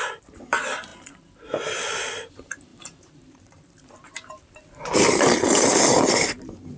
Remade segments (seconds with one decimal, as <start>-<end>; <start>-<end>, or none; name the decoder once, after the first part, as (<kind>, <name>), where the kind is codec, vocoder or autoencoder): 2.7-6.8 (vocoder, BigVGAN v2)